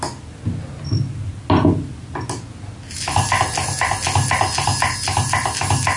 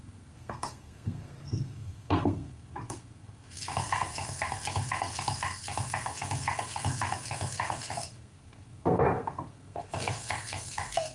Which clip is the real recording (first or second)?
first